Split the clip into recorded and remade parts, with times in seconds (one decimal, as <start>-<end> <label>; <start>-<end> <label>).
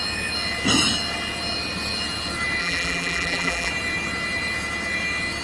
0.0-2.6 recorded; 2.6-3.7 remade; 3.7-5.4 recorded